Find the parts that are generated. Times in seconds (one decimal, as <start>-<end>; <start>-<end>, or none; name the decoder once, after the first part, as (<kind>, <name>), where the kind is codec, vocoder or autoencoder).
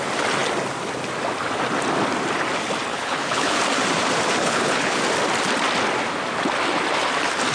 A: 2.9-3.6 (codec, HILCodec); 4.4-5.0